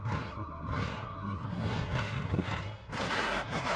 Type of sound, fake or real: fake